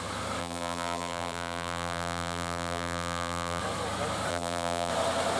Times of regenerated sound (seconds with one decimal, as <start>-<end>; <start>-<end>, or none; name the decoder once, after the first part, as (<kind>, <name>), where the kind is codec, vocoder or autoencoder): 0.4-3.6 (vocoder, BigVGAN v2); 4.3-4.9